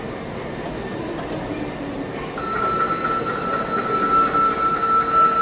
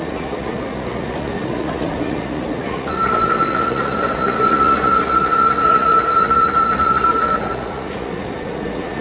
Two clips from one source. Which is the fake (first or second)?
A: second